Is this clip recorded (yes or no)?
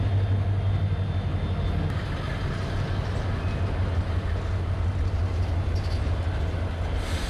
yes